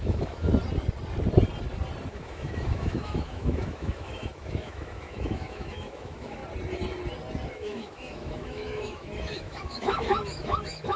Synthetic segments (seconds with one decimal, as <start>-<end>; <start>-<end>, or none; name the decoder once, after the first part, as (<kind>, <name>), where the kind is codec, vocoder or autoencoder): 0.0-0.5 (autoencoder, DAC-VAE); 2.1-6.4; 7.5-11.0